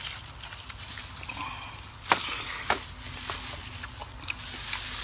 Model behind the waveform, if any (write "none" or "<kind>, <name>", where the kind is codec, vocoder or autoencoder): none